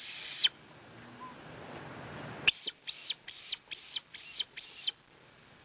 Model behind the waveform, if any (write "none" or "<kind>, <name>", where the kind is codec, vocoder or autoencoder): none